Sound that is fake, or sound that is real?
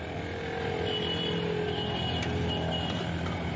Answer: real